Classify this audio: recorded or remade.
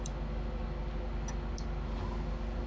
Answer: recorded